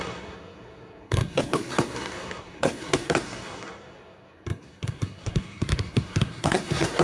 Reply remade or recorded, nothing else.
remade